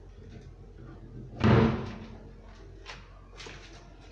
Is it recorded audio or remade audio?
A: recorded